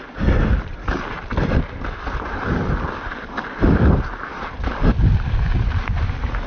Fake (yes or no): yes